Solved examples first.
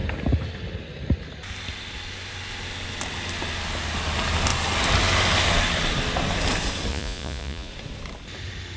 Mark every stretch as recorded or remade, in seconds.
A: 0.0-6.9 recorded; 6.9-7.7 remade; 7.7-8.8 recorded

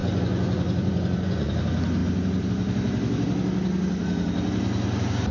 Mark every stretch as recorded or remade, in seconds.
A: 0.0-1.5 remade; 1.5-5.3 recorded

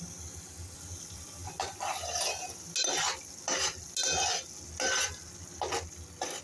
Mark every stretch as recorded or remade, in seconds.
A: 0.0-6.4 recorded

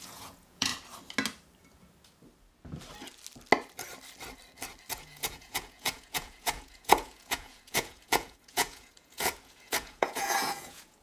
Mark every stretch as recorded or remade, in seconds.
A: 0.0-0.7 remade; 0.7-4.9 recorded; 4.9-11.0 remade

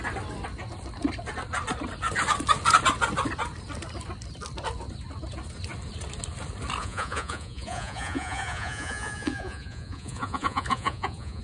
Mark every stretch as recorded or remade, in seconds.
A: 0.0-6.8 recorded; 6.8-11.4 remade

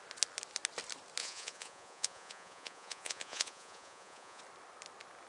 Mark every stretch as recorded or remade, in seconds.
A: 0.0-1.2 recorded; 1.2-4.4 remade; 4.4-5.3 recorded